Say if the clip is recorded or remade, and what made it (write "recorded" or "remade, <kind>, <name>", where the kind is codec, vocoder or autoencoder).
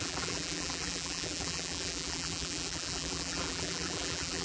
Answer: remade, vocoder, BigVGAN v2